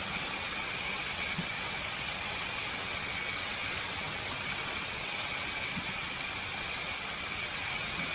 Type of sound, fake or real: fake